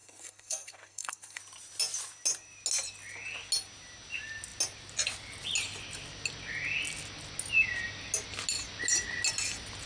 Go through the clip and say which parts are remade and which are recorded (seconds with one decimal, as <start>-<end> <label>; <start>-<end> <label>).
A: 0.0-1.4 remade; 1.4-9.9 recorded

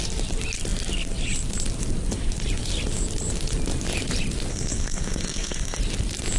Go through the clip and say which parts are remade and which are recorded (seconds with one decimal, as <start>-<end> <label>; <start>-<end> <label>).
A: 0.0-4.5 recorded; 4.5-5.8 remade; 5.8-6.4 recorded